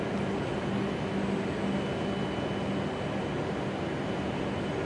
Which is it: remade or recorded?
recorded